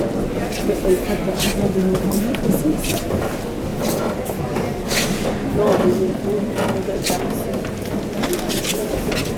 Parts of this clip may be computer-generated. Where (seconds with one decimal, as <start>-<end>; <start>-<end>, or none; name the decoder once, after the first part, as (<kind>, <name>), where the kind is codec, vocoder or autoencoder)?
none